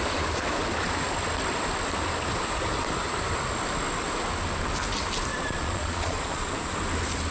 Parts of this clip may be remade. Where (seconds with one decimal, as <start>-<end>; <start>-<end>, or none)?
5.3-6.5

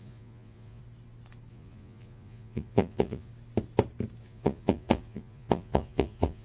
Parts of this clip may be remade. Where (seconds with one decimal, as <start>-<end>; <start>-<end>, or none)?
0.0-0.8; 1.5-3.3; 4.2-6.4

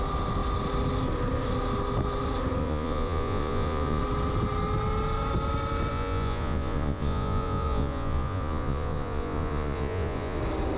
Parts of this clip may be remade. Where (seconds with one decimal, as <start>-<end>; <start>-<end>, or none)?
2.6-4.0; 5.9-10.4

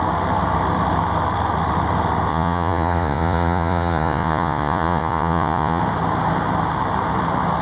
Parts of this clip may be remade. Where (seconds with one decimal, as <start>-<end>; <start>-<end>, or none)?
2.3-5.8

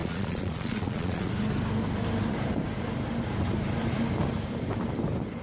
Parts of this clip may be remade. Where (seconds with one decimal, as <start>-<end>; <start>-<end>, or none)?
0.0-1.3

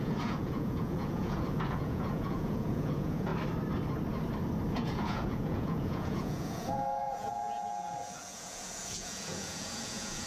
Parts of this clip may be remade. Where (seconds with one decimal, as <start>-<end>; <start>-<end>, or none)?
0.0-3.3; 4.7-10.3

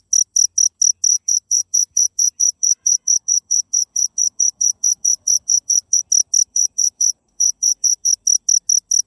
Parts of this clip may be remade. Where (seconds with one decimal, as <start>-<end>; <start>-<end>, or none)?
1.1-6.0; 6.5-8.1

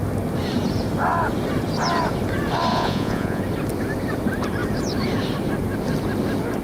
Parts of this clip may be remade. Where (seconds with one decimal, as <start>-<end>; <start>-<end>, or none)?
2.7-3.4